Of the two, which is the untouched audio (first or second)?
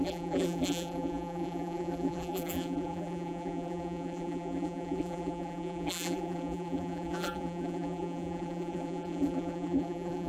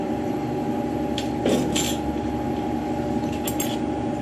second